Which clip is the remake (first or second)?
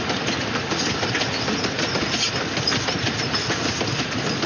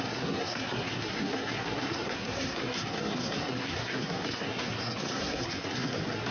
second